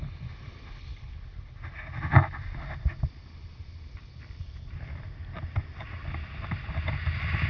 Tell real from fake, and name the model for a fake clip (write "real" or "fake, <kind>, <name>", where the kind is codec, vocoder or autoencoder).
real